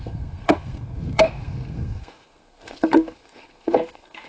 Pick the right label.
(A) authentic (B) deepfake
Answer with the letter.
B